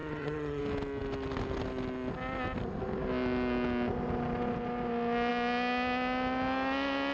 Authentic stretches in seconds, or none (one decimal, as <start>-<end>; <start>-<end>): 0.6-7.1